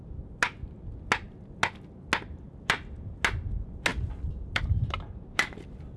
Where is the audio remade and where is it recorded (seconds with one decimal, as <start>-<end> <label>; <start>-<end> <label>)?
0.0-6.0 recorded